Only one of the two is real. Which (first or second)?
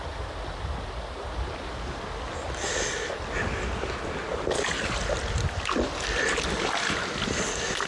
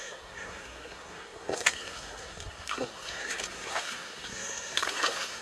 first